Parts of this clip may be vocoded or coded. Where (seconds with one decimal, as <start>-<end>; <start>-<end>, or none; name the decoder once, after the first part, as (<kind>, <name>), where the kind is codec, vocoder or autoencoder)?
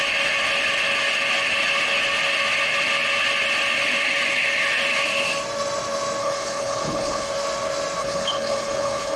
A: 6.2-7.3 (codec, HILCodec); 8.0-9.2